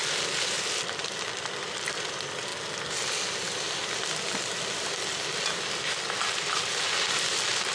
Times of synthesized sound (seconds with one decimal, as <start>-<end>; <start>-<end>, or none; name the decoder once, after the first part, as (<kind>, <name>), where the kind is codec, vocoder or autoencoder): 0.0-2.5 (vocoder, BigVGAN v2); 6.9-7.7